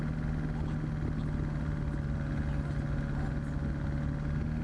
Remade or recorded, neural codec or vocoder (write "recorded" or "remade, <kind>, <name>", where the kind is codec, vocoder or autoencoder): recorded